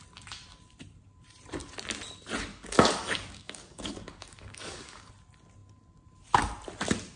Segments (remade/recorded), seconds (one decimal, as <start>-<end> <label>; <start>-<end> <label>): 0.0-2.5 recorded; 2.5-5.1 remade; 5.1-7.2 recorded